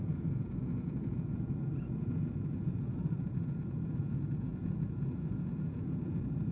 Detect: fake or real fake